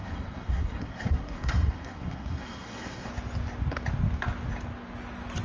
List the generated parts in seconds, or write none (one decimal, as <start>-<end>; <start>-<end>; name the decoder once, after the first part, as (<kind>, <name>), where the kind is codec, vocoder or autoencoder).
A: 0.0-3.1 (codec, SNAC)

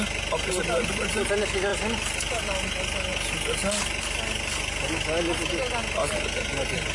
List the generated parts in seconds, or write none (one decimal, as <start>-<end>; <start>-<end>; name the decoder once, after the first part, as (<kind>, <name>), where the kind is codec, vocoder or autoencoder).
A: none

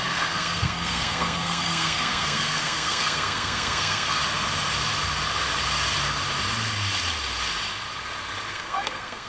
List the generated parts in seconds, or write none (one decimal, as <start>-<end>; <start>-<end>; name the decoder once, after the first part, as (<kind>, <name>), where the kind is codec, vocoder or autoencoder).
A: 0.0-4.2 (codec, SNAC); 8.5-9.3

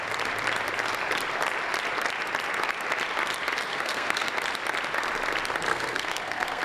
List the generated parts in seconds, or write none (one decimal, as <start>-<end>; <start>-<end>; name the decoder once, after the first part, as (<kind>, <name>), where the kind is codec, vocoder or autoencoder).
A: 3.7-4.3 (codec, SNAC); 5.7-6.6

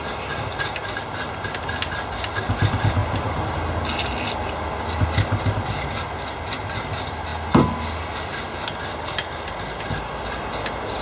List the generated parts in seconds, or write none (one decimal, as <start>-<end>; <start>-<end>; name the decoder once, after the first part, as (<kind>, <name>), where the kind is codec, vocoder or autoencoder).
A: none

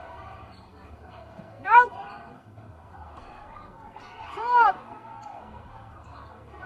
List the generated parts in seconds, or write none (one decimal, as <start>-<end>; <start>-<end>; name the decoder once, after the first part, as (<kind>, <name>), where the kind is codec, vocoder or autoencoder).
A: 0.0-6.7 (codec, SNAC)

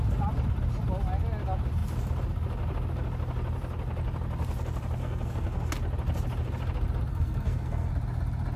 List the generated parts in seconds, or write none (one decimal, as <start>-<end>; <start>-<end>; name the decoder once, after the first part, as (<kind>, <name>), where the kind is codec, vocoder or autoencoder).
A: 5.0-5.7 (codec, SNAC); 7.1-7.9

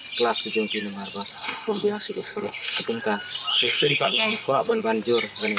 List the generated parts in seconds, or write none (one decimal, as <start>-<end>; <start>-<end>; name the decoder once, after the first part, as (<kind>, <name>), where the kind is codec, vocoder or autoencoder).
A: 1.3-3.0 (codec, SNAC); 3.5-4.8